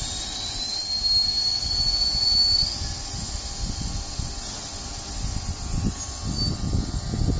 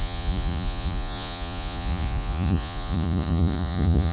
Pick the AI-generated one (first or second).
second